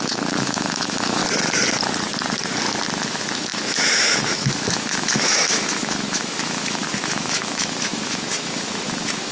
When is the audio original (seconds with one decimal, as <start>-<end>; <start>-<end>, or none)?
1.2-3.1